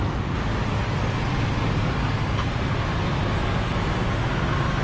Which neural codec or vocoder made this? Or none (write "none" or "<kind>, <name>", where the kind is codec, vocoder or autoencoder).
none